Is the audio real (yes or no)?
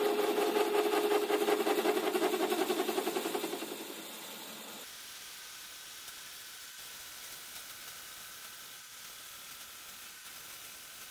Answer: yes